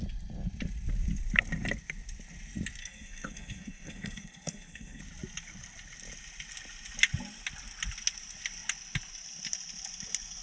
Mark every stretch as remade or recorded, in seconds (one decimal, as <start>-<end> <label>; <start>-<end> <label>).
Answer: 0.0-2.8 recorded; 2.8-5.0 remade; 5.0-10.4 recorded